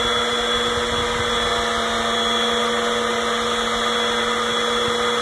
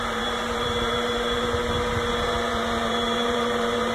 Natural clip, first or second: first